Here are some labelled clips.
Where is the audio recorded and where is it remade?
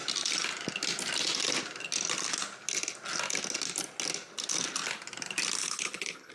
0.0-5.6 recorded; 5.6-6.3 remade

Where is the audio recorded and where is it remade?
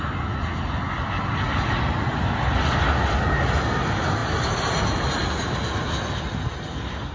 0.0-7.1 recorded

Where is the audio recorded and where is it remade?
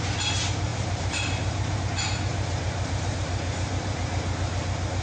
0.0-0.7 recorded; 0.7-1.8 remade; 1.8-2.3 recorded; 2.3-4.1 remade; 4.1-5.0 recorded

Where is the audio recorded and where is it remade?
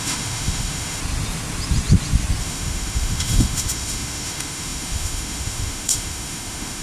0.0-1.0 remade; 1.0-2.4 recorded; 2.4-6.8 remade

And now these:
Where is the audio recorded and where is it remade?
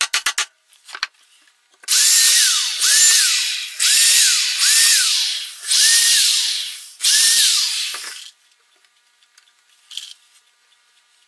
0.0-6.0 recorded; 6.0-8.2 remade; 8.2-11.3 recorded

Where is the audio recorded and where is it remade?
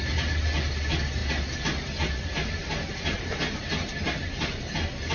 0.0-5.1 recorded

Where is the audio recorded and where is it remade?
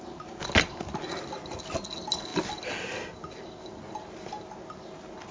0.0-5.3 recorded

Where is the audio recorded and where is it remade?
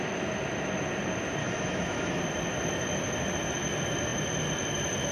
0.0-1.4 recorded; 1.4-2.2 remade; 2.2-5.1 recorded